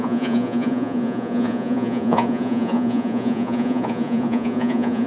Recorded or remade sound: remade